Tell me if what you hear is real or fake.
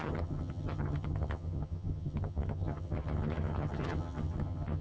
fake